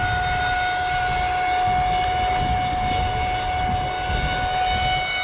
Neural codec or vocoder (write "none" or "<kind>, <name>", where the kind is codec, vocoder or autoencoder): none